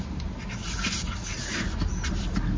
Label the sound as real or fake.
real